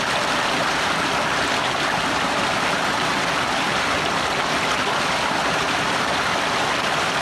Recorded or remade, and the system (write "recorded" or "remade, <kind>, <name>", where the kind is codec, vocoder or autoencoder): recorded